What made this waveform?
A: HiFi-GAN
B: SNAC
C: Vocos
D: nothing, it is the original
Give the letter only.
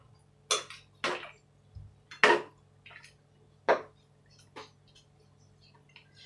D